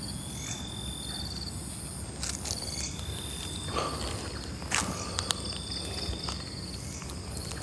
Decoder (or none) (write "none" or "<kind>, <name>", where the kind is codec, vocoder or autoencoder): none